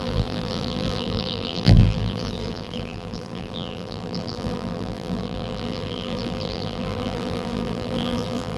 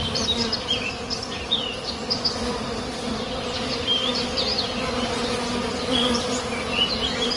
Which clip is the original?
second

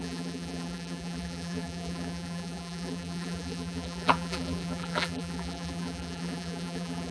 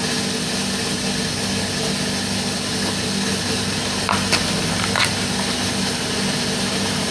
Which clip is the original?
second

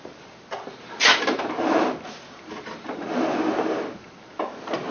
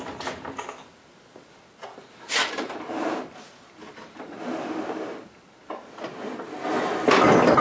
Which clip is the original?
second